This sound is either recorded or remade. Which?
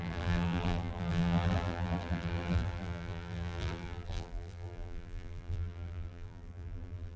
remade